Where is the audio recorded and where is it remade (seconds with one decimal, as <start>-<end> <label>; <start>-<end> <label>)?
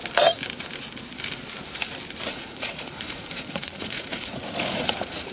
0.0-2.3 recorded; 2.3-5.3 remade